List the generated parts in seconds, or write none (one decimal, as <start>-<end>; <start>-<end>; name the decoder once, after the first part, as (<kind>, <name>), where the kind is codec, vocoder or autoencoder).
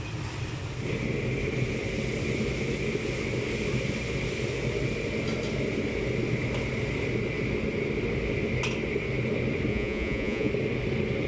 9.7-10.5 (vocoder, Vocos)